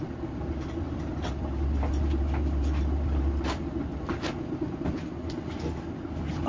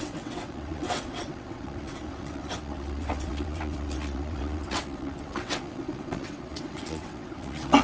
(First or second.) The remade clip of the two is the second